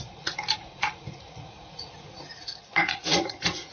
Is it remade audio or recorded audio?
remade